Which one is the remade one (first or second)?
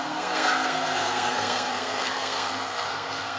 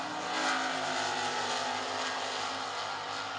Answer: first